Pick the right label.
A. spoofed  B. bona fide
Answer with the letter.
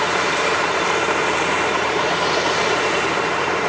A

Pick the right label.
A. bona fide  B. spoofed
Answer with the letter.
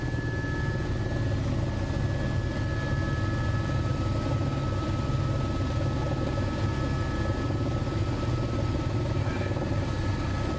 A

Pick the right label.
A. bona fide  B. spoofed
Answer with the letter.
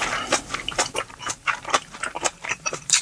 B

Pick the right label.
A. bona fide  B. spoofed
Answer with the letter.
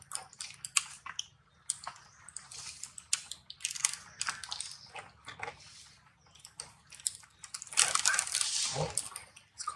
A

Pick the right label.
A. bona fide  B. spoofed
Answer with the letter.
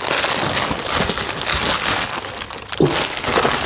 A